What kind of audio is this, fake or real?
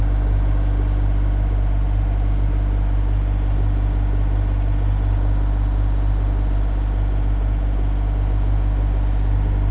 real